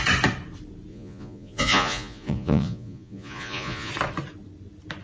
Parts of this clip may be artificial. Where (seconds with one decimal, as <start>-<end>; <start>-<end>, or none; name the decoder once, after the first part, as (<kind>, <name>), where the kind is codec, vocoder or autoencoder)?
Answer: 0.9-3.9 (vocoder, Vocos)